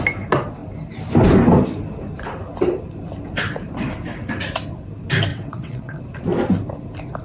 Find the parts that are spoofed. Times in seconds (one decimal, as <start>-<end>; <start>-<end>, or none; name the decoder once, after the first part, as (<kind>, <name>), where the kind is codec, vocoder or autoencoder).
5.3-6.0 (vocoder, WaveNeXt)